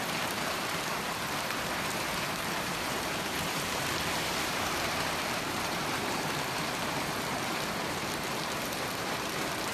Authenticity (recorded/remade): remade